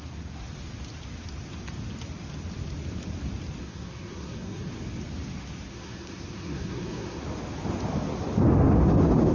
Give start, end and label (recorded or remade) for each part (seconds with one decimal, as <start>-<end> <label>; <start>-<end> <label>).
0.0-3.6 recorded; 3.6-4.7 remade; 4.7-5.7 recorded; 5.7-7.2 remade; 7.2-9.3 recorded